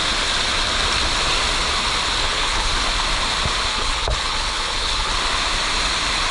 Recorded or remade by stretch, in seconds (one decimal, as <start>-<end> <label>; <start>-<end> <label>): 0.0-2.2 recorded; 2.2-2.7 remade; 2.7-3.7 recorded; 3.7-5.1 remade; 5.1-6.3 recorded